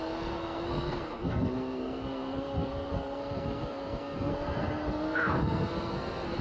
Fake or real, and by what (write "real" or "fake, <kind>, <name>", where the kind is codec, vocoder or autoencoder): fake, codec, SNAC